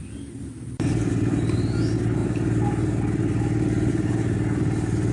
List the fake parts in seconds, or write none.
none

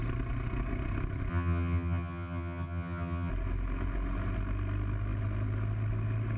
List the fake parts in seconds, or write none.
1.3-3.3 (vocoder, HiFi-GAN)